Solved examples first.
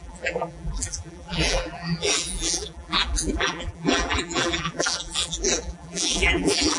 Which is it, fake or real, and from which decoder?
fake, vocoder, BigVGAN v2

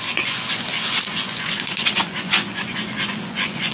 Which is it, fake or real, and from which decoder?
fake, vocoder, Vocos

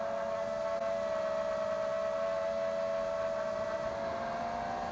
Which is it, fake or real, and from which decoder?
real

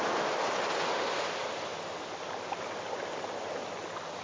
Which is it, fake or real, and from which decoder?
real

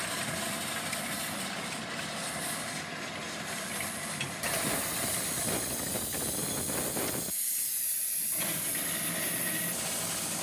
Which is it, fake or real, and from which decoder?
real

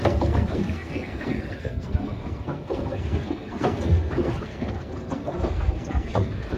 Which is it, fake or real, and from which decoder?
fake, codec, SNAC